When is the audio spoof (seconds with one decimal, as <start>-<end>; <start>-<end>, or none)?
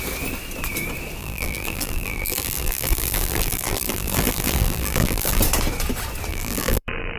1.2-5.4; 6.3-7.2